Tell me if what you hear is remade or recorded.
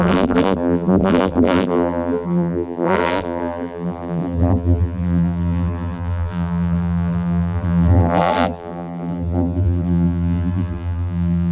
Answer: remade